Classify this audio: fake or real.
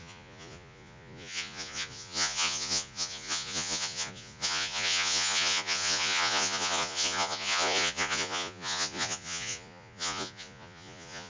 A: fake